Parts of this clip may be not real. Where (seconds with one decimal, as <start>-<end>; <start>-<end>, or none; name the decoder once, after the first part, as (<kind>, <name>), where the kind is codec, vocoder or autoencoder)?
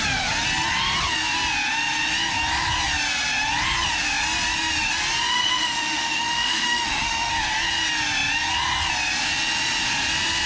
5.3-7.3 (autoencoder, DAC-VAE)